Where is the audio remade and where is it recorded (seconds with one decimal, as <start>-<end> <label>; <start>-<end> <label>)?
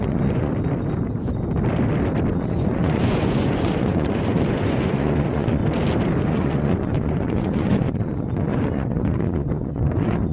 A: 0.0-0.5 remade; 0.5-2.3 recorded; 2.3-5.6 remade; 5.6-6.2 recorded; 6.2-10.3 remade